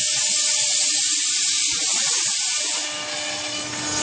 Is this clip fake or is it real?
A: real